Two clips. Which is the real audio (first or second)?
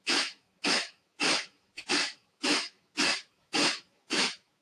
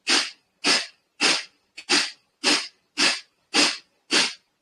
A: second